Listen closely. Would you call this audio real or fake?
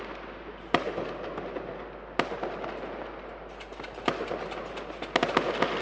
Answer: real